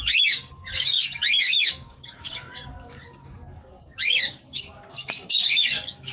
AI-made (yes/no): yes